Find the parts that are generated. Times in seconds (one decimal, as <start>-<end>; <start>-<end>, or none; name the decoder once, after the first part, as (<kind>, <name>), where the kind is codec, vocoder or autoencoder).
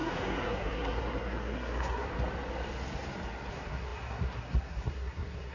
0.0-2.1 (codec, SNAC); 3.5-5.5